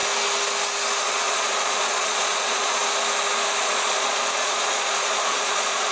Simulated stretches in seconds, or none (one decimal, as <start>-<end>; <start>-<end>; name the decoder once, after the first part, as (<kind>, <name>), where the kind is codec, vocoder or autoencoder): 1.0-2.8 (vocoder, Vocos); 3.6-5.9